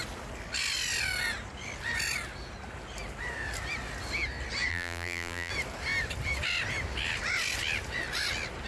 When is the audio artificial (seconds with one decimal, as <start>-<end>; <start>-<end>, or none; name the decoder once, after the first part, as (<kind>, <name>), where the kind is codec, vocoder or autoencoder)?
4.7-5.5 (vocoder, BigVGAN v2)